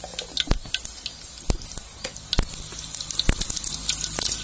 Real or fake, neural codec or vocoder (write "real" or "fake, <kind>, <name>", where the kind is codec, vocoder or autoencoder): real